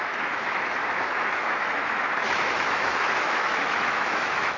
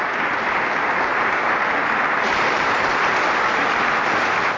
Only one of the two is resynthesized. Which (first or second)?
first